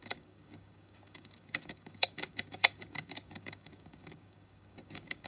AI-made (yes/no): yes